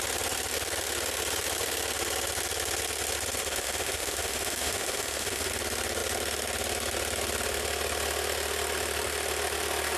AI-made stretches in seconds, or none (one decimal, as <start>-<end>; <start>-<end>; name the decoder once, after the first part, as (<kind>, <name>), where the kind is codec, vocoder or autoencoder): 3.4-5.5 (autoencoder, DAC-VAE)